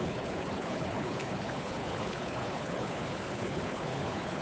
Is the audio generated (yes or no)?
yes